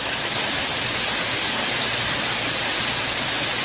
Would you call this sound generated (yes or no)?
no